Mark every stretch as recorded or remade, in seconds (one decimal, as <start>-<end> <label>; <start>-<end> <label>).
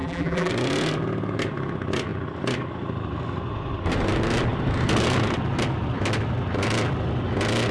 0.0-0.5 remade; 0.5-7.7 recorded